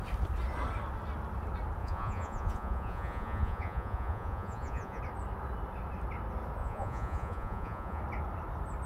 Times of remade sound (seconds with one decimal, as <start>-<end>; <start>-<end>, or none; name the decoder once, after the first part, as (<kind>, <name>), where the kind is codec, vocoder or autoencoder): 1.8-5.0 (vocoder, Vocos); 6.6-8.0